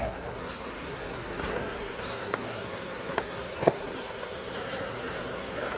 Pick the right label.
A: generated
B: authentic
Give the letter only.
A